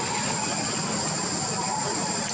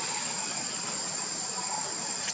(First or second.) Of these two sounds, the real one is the first